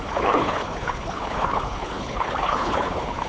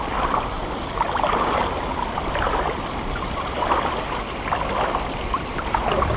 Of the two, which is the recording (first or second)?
second